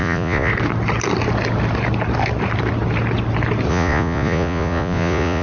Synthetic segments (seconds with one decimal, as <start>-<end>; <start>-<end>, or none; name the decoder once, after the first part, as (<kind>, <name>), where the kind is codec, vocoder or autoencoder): 0.0-0.5 (vocoder, Vocos); 3.7-5.4